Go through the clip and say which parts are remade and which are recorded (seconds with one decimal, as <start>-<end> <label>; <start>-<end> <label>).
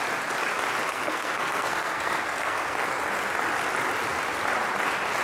0.0-0.9 recorded; 0.9-3.0 remade; 3.0-5.2 recorded